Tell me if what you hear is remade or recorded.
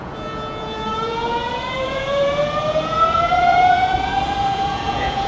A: remade